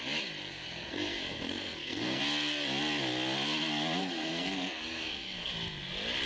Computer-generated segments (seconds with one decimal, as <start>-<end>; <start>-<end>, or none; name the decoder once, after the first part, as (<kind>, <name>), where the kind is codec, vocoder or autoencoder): 0.4-2.2 (codec, SNAC); 4.0-5.5

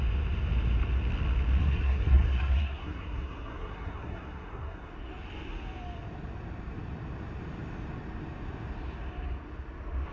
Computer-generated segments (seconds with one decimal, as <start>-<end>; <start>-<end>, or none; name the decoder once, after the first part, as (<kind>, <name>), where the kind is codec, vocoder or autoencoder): 1.6-4.9 (codec, SNAC)

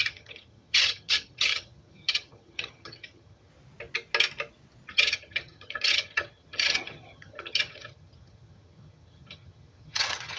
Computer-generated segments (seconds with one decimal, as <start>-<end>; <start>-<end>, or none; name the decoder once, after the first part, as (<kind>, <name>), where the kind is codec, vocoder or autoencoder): 0.0-3.5 (vocoder, HiFi-GAN); 4.9-10.4

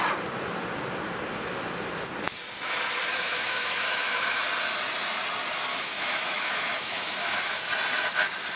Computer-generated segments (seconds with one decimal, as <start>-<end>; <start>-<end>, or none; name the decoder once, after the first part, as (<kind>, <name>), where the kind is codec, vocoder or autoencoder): 3.1-4.4 (autoencoder, DAC-VAE); 5.7-7.6

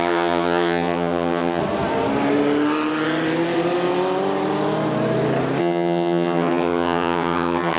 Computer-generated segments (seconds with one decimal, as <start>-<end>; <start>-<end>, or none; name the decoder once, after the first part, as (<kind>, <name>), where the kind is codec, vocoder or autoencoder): 0.0-1.6 (vocoder, HiFi-GAN); 5.6-7.8

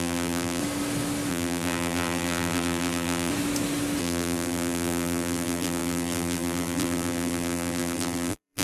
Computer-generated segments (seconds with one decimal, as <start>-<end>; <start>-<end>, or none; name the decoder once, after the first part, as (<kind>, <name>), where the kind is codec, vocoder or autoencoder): 0.0-0.6 (vocoder, BigVGAN v2); 1.3-3.3; 4.0-8.6

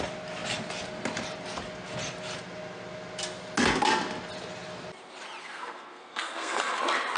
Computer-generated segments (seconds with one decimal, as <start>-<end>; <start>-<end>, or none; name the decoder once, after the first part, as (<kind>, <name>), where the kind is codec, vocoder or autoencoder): 5.4-6.8 (codec, SNAC)

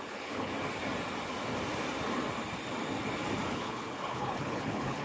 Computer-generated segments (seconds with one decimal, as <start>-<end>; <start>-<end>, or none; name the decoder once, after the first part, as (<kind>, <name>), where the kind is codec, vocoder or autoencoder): 0.0-0.5 (codec, HILCodec); 3.5-5.0